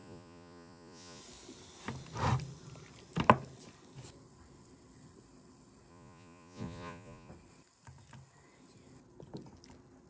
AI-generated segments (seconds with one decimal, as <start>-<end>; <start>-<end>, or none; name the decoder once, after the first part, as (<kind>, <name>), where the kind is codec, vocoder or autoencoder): 0.0-1.2 (vocoder, Vocos); 5.9-7.3